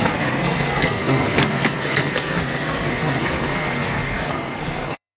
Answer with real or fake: fake